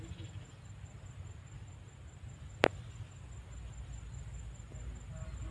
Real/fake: real